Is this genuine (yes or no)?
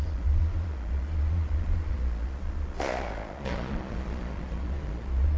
no